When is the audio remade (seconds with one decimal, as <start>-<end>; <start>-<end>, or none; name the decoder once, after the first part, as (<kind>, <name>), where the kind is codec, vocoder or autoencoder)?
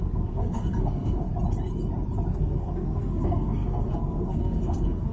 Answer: 0.0-1.3 (codec, SNAC); 2.3-5.1